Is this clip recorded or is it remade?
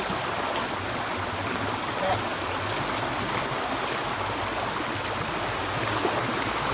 recorded